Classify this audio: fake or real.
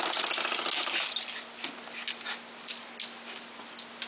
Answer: real